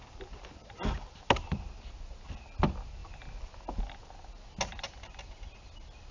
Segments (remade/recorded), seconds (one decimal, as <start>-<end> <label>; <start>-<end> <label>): 0.0-6.1 recorded